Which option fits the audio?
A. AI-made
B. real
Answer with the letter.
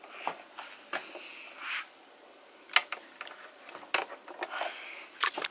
B